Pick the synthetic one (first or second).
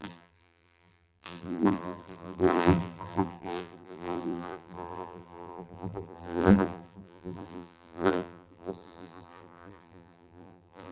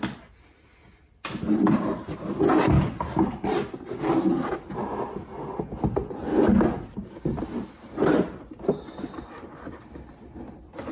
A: first